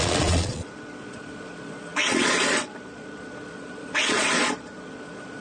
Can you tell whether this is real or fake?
fake